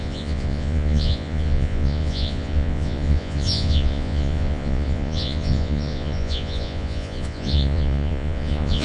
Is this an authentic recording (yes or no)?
no